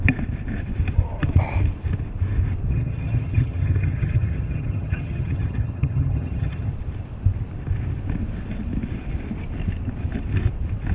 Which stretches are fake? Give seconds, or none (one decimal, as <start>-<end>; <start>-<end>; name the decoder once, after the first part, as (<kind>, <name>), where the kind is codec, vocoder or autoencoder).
2.7-6.7 (vocoder, HiFi-GAN)